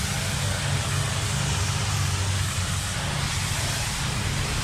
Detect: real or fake real